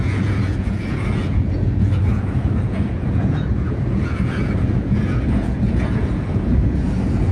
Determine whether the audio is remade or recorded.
remade